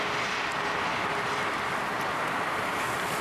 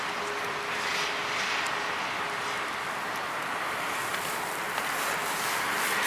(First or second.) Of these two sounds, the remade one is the first